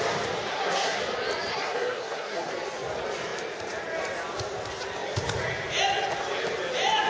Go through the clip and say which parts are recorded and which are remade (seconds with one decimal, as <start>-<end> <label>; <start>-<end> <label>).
0.0-0.5 recorded; 0.5-1.0 remade; 1.0-1.5 recorded; 1.5-2.5 remade; 2.5-7.1 recorded